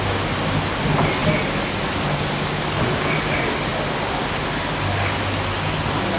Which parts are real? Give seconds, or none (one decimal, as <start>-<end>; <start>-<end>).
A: 0.0-6.2